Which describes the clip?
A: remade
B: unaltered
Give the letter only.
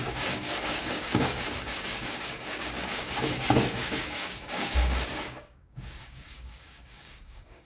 A